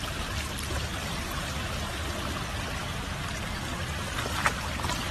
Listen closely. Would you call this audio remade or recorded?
recorded